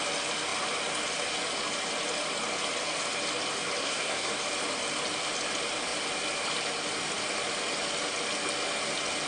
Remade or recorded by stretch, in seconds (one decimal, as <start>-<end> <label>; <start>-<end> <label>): 0.0-3.8 recorded; 3.8-4.3 remade; 4.3-9.3 recorded

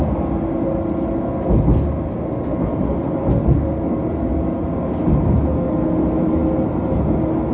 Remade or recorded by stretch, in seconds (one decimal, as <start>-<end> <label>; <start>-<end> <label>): 0.0-7.5 recorded

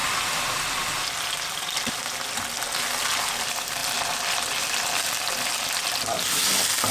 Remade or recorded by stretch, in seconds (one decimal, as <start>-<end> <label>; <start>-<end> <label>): 0.0-6.9 recorded

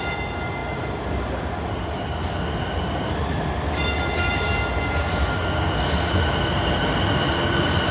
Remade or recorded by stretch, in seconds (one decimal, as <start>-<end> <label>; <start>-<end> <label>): 0.0-7.9 recorded

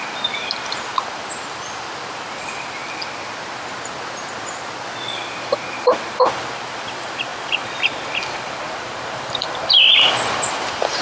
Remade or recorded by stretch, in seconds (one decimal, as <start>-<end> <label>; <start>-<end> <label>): 0.0-2.8 remade; 2.8-6.1 recorded; 6.1-11.0 remade

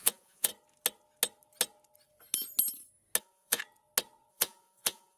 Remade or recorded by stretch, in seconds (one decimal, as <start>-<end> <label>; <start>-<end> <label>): 0.0-0.5 remade; 0.5-3.2 recorded; 3.2-3.6 remade; 3.6-4.3 recorded; 4.3-5.2 remade

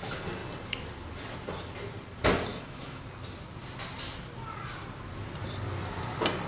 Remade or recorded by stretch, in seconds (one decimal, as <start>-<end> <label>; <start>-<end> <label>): 0.0-2.5 recorded; 2.5-3.0 remade; 3.0-6.5 recorded